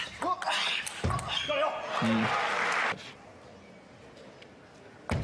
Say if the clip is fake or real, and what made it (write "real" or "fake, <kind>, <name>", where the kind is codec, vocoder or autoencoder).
real